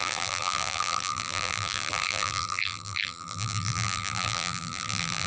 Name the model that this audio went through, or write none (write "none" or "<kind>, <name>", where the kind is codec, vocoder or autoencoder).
vocoder, BigVGAN v2